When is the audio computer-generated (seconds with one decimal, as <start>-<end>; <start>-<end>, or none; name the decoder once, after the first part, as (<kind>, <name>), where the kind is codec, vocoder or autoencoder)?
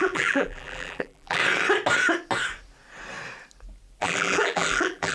0.0-1.4 (vocoder, BigVGAN v2); 4.0-5.1